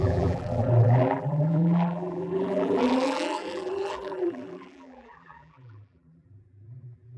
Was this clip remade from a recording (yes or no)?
yes